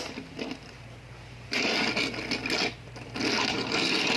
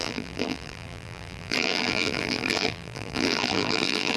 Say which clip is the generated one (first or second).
second